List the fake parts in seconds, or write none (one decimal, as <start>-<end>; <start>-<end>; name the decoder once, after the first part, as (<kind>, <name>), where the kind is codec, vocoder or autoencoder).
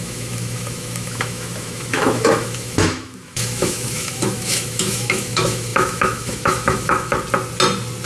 0.0-7.1 (autoencoder, DAC-VAE)